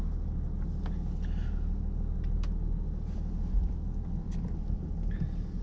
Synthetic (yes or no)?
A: no